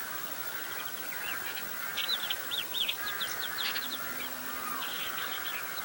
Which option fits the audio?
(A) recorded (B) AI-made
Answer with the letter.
B